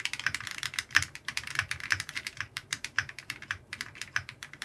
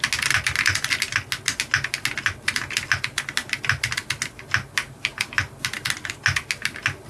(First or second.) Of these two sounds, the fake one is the first